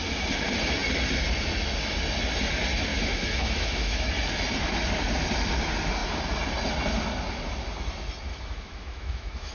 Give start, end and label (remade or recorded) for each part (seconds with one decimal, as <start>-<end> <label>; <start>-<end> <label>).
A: 0.0-2.9 recorded; 2.9-4.1 remade; 4.1-8.3 recorded; 8.3-9.5 remade